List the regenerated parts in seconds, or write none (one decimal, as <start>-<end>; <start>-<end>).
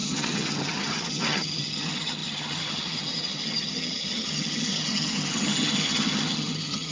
0.0-6.9